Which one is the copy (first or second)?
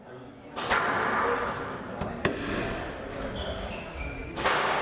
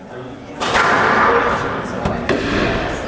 second